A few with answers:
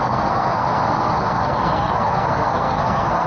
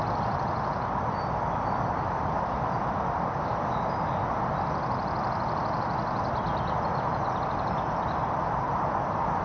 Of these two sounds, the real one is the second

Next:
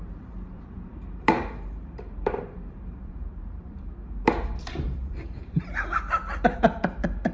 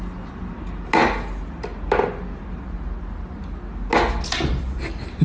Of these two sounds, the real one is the second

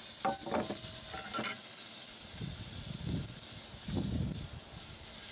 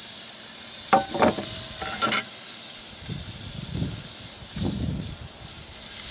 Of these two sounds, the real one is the first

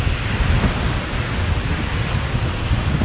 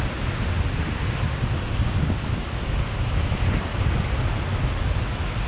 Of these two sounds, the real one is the second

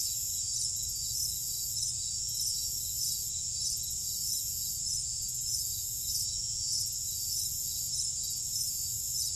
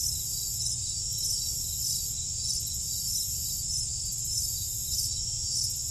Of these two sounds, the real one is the second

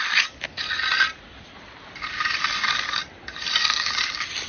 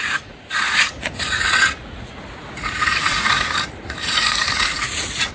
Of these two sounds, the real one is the first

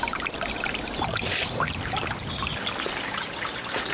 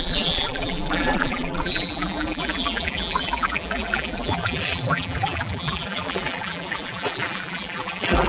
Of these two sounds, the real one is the first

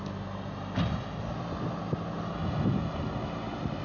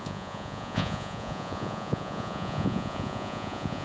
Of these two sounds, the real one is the first